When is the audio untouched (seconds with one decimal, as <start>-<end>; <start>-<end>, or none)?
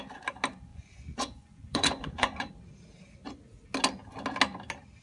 0.0-0.7; 2.5-5.0